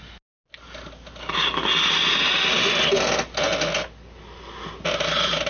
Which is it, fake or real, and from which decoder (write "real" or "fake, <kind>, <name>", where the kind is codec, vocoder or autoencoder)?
real